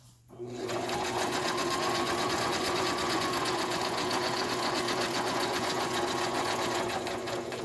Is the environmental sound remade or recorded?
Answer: remade